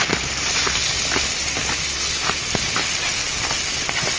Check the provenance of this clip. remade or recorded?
recorded